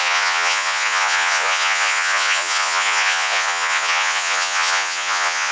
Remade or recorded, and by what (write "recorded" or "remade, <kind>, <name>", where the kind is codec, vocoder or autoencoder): remade, vocoder, Vocos